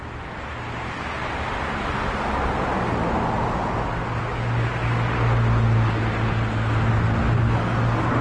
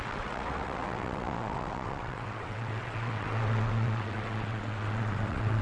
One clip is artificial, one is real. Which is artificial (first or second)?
second